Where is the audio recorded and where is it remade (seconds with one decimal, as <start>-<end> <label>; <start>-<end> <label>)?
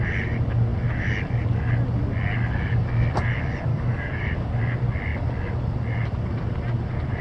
0.0-3.7 recorded; 3.7-4.5 remade; 4.5-7.2 recorded